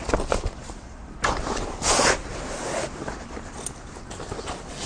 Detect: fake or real real